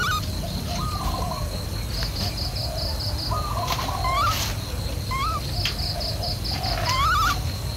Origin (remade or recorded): recorded